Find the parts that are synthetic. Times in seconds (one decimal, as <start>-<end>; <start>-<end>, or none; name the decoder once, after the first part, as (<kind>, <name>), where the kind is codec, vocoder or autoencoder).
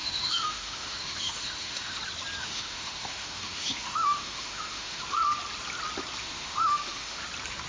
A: 0.0-2.0 (autoencoder, DAC-VAE); 2.4-5.0; 6.2-7.2